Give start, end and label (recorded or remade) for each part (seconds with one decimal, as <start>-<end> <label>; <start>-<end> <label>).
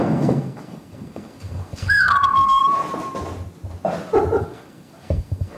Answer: 0.0-2.6 remade; 2.6-4.4 recorded; 4.4-5.6 remade